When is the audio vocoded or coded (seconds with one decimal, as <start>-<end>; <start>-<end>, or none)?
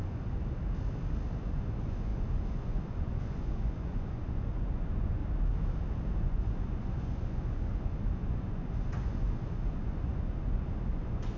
0.0-0.4; 1.4-5.2; 6.2-11.4